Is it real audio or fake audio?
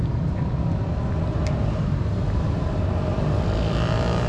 real